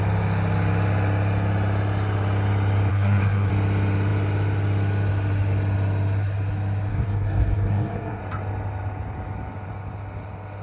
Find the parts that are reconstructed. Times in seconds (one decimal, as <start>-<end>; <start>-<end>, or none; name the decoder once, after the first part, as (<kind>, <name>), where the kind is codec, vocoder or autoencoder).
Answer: 2.9-3.5 (codec, SNAC); 6.9-8.2